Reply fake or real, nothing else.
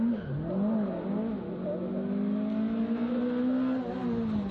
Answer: real